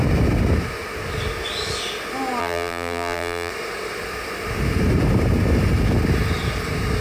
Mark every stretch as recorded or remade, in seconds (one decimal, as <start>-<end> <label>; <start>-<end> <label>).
0.0-2.4 recorded; 2.4-3.5 remade; 3.5-7.0 recorded